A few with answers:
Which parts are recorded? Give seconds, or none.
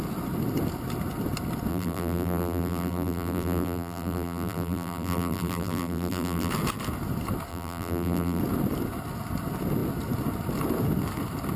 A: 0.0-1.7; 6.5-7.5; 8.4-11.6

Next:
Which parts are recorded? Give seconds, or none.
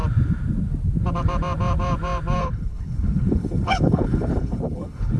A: 0.0-2.4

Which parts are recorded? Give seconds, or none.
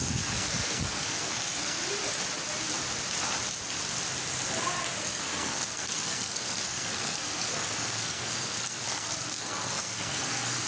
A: 1.8-5.0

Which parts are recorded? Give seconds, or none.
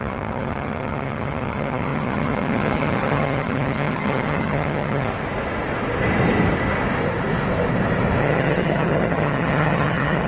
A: 5.1-8.2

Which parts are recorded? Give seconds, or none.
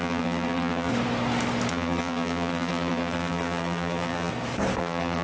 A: 0.9-1.7; 4.3-4.8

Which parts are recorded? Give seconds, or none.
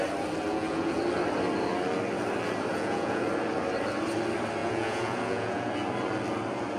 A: 0.0-0.5; 1.0-2.7; 3.2-4.6; 5.7-6.8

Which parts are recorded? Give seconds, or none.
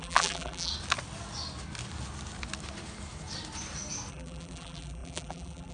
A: 0.7-4.1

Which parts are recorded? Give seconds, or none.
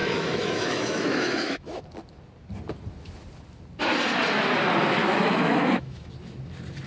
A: 1.8-5.0; 6.1-6.9